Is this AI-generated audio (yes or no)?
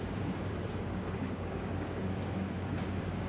yes